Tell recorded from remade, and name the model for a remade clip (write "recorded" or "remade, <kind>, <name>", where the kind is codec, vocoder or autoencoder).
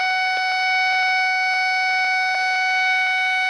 recorded